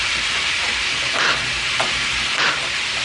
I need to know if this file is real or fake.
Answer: fake